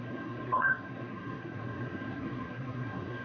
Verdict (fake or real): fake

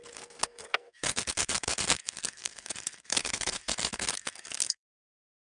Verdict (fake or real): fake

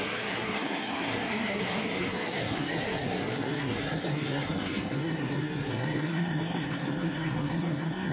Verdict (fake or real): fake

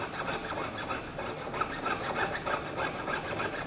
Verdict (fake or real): real